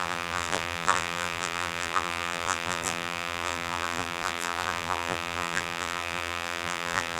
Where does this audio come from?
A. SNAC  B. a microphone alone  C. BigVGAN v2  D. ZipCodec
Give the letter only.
C